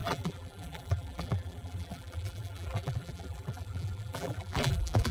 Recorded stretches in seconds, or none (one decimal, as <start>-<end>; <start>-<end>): none